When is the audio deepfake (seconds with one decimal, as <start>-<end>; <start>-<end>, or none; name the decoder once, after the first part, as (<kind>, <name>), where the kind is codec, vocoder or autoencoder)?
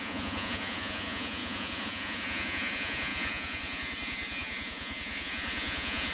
0.0-6.1 (vocoder, Vocos)